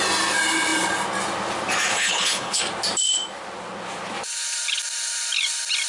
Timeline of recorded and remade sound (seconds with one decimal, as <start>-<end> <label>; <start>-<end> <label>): 0.0-1.9 recorded; 1.9-2.6 remade; 2.6-5.9 recorded